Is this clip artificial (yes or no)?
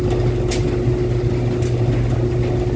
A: no